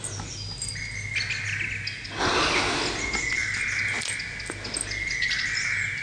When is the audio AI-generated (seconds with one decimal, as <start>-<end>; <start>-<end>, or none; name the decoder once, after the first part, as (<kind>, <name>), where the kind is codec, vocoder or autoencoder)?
none